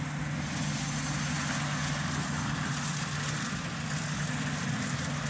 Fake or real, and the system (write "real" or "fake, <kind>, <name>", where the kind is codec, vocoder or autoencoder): real